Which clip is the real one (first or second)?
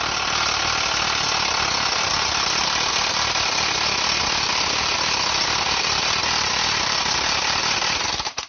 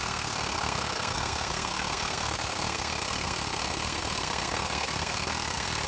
first